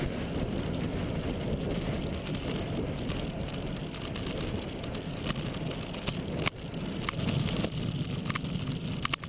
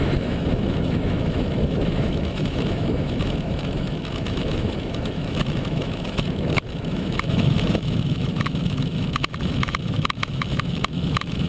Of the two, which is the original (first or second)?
first